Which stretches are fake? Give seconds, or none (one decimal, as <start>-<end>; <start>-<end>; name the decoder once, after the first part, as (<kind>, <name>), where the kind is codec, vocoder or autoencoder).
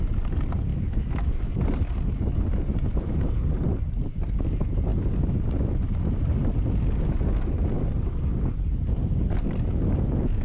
0.7-1.3 (autoencoder, DAC-VAE)